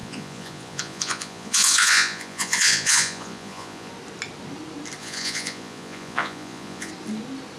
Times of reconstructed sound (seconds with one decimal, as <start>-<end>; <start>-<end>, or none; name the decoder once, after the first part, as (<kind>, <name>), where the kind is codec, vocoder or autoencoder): 0.0-3.9 (vocoder, Vocos); 5.0-6.9